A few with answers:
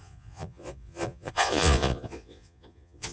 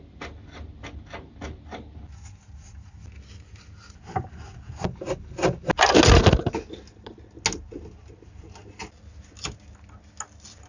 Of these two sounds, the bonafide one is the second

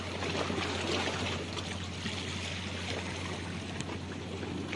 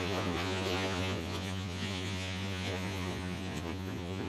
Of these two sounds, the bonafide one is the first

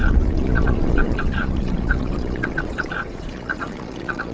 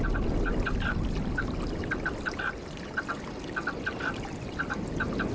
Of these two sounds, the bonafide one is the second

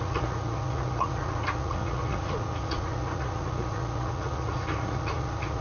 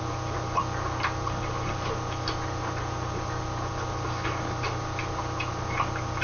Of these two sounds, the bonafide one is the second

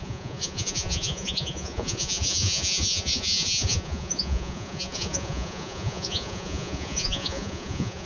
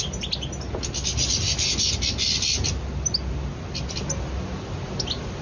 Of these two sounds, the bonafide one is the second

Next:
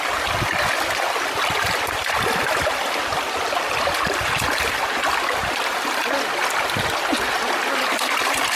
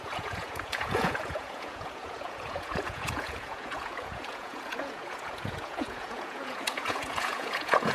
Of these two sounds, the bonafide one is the first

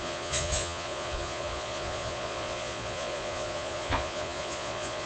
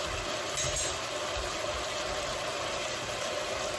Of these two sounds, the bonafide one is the second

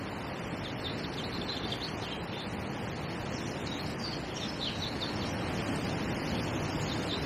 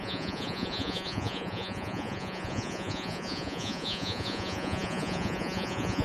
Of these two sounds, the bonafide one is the first